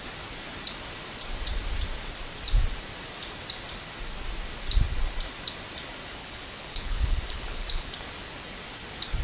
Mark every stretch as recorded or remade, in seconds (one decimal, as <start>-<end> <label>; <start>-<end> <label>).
0.0-6.2 recorded; 6.2-7.9 remade; 7.9-9.2 recorded